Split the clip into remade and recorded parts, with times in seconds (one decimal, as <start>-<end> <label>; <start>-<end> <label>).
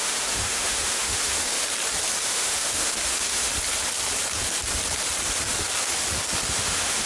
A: 0.0-1.6 remade; 1.6-2.2 recorded; 2.2-3.5 remade; 3.5-6.5 recorded; 6.5-7.1 remade